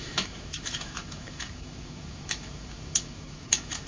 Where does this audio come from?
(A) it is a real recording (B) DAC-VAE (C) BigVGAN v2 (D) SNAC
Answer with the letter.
B